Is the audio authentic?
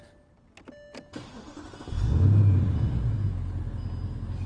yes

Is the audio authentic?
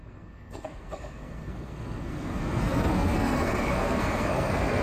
no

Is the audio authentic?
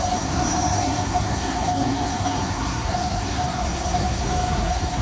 no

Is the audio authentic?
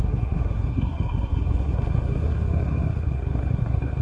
no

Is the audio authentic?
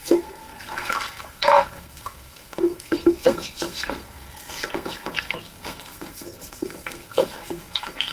no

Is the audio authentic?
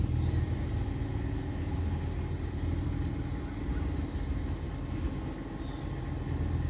yes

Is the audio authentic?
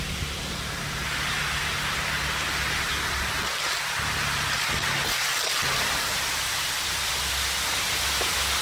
yes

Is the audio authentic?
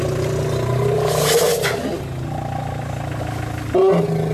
yes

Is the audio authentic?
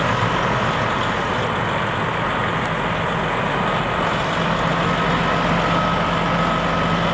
yes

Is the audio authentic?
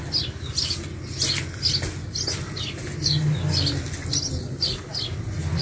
yes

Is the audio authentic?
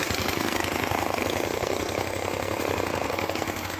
no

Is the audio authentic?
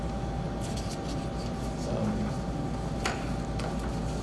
yes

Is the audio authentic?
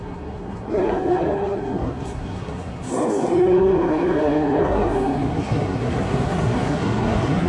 no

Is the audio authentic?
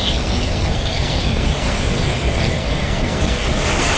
no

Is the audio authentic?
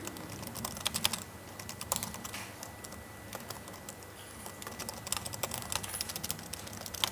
yes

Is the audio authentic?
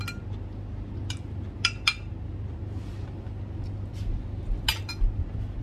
yes